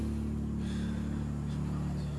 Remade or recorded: recorded